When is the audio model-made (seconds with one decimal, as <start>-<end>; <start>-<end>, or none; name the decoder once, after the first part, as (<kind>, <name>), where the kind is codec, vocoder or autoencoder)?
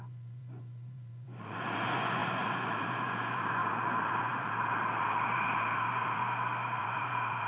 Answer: 0.0-6.2 (vocoder, Vocos); 6.8-7.5